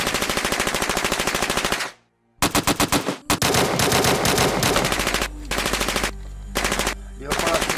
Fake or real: real